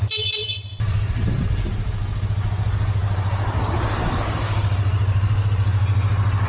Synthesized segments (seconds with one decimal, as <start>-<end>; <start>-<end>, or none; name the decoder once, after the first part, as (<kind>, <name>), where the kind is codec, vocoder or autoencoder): 0.4-1.4 (vocoder, BigVGAN v2); 3.0-5.5